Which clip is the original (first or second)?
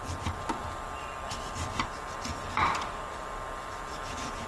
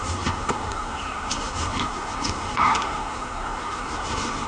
first